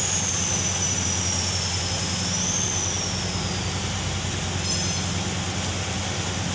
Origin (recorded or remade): recorded